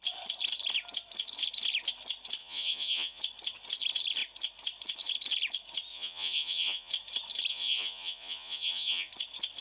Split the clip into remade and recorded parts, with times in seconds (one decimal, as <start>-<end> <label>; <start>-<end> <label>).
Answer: 0.0-2.4 recorded; 2.4-3.2 remade; 3.2-5.9 recorded; 5.9-6.9 remade; 6.9-7.5 recorded; 7.5-9.1 remade; 9.1-9.6 recorded